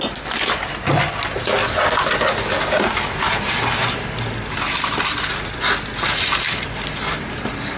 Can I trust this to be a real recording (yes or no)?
yes